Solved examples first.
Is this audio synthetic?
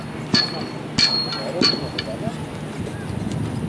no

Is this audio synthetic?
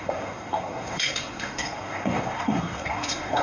yes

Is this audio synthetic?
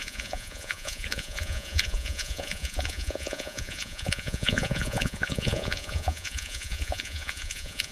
yes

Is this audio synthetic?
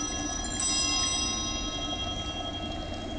no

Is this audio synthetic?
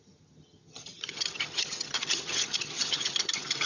yes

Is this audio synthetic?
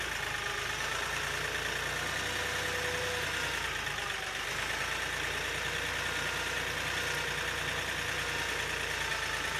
no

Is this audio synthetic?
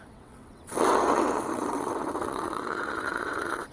yes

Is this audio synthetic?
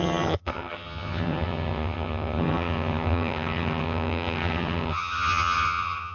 yes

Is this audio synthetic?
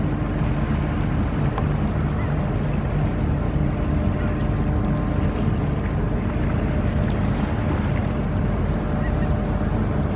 no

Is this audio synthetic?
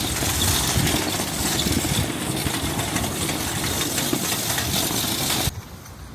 no